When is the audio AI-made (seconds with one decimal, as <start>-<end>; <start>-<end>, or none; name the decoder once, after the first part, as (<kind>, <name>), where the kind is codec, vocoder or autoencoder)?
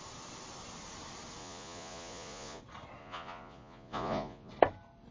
1.4-2.6 (vocoder, Vocos); 3.0-4.5